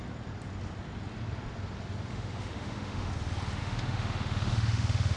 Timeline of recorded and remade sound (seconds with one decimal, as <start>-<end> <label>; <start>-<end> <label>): 0.0-2.1 recorded; 2.1-3.1 remade; 3.1-3.6 recorded; 3.6-5.2 remade